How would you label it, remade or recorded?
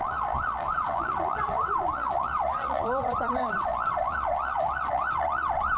remade